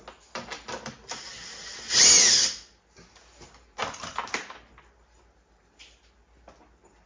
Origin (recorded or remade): recorded